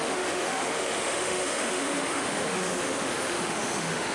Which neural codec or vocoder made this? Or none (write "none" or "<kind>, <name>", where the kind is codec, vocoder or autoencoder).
autoencoder, DAC-VAE